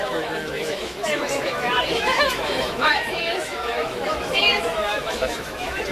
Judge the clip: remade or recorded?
remade